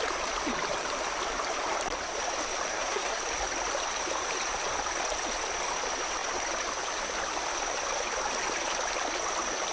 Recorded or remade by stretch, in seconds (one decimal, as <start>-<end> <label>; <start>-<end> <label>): 0.0-2.7 recorded; 2.7-3.2 remade; 3.2-9.7 recorded